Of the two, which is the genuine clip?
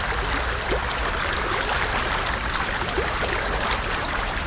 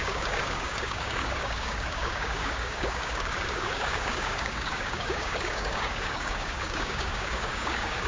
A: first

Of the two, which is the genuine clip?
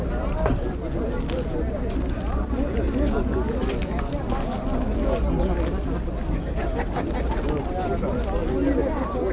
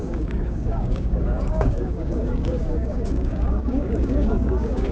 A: first